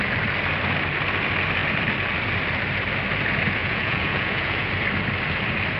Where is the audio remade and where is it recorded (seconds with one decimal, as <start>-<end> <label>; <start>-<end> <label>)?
0.0-3.6 recorded; 3.6-4.7 remade; 4.7-5.8 recorded